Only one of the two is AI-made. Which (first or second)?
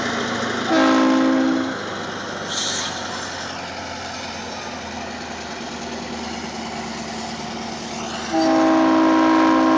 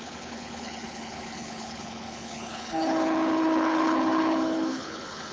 second